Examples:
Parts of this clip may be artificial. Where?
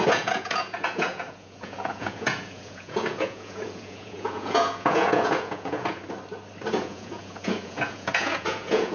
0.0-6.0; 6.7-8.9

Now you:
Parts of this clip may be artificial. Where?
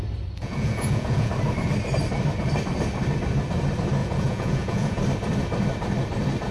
0.4-1.3; 4.0-5.0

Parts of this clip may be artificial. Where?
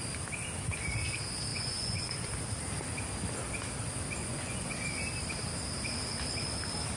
1.5-2.3; 4.2-4.7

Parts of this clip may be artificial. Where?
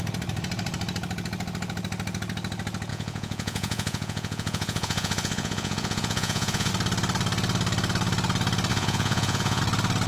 2.9-6.7; 8.7-9.6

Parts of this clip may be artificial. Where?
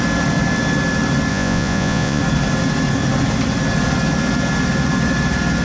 1.3-2.2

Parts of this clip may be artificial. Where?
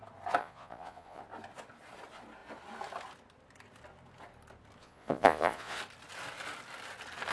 0.4-1.2; 4.8-5.8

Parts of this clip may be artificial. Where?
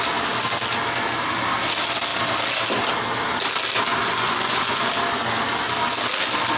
4.0-4.9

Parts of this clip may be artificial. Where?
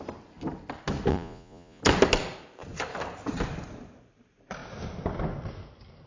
1.1-1.8